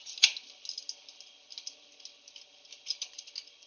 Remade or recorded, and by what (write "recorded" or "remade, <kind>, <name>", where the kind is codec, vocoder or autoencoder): recorded